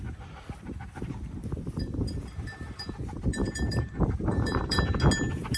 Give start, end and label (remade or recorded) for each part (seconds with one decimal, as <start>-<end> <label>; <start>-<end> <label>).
0.0-1.4 recorded; 1.4-4.8 remade; 4.8-5.6 recorded